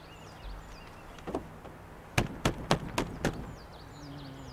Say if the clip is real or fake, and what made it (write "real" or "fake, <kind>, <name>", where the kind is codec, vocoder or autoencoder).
real